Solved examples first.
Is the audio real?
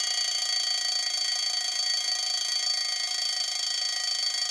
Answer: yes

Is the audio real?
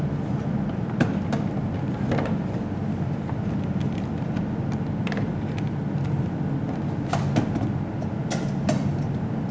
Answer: yes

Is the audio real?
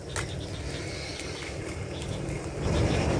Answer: yes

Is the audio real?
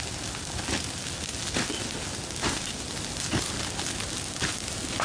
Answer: yes